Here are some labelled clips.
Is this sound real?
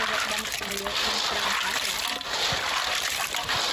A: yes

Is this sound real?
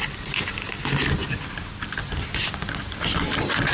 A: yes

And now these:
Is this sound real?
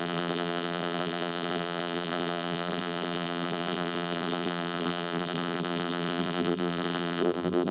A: no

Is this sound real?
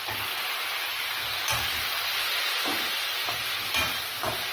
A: yes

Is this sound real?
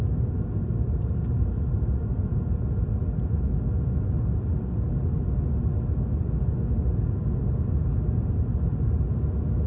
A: yes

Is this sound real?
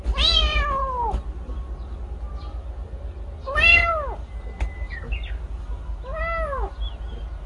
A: yes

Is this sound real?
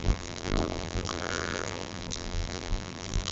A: no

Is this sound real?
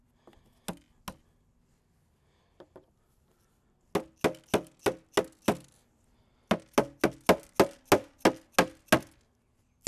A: yes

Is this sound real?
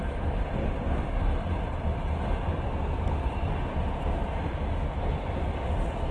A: yes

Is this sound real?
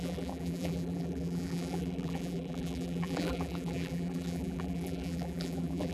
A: no